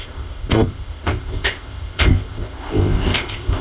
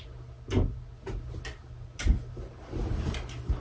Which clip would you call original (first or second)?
second